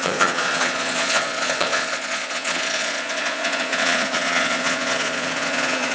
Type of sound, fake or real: fake